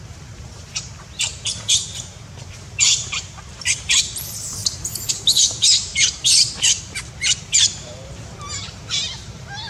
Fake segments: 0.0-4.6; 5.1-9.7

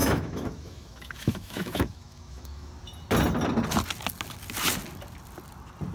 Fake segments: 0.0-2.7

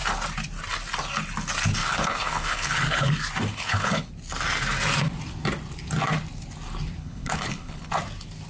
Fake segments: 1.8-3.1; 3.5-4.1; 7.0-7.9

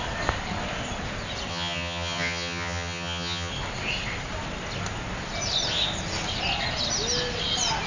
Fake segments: 1.5-3.5